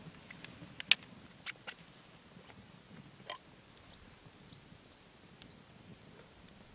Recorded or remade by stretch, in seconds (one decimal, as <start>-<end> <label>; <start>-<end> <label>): 0.0-6.7 recorded